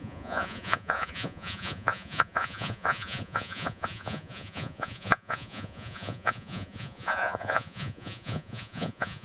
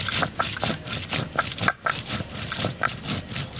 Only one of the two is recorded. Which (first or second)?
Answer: second